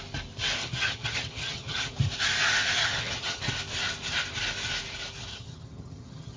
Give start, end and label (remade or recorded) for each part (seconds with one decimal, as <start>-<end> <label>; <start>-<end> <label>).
0.0-0.6 recorded; 0.6-1.9 remade; 1.9-2.8 recorded; 2.8-3.4 remade; 3.4-5.3 recorded; 5.3-6.4 remade